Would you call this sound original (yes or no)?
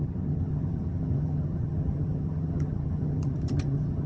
no